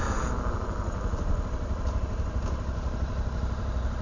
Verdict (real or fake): real